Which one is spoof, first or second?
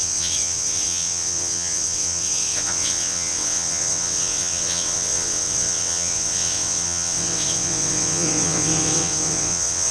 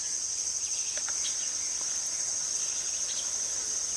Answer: first